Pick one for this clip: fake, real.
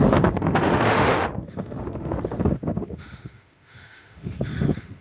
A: fake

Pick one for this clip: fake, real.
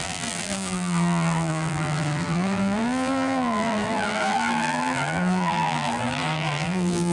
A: fake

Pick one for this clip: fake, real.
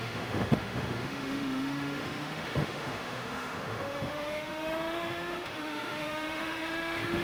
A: fake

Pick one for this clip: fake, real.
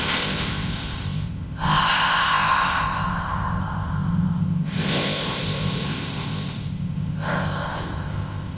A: fake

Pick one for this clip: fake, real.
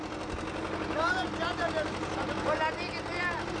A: real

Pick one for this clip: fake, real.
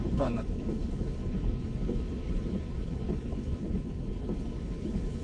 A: fake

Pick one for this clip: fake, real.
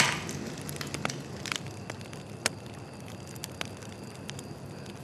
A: real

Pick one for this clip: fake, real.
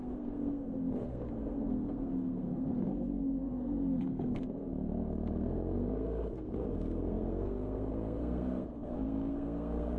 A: fake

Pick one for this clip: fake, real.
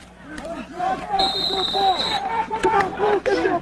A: fake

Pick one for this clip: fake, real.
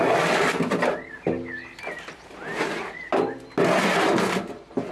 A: real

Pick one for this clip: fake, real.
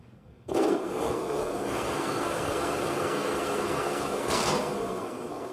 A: fake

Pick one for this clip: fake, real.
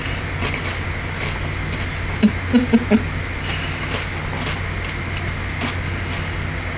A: real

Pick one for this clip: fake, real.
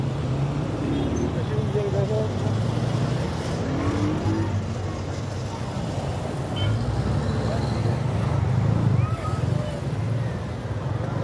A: real